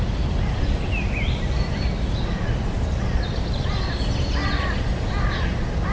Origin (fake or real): real